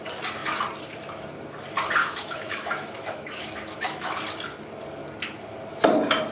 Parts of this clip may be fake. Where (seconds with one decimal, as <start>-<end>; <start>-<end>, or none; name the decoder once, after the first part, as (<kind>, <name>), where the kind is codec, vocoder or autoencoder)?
2.0-4.2 (autoencoder, DAC-VAE)